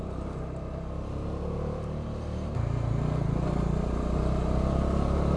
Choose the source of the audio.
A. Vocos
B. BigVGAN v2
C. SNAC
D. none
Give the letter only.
D